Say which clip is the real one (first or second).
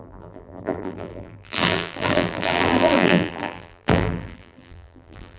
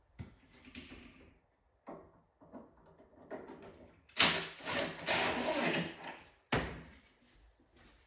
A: second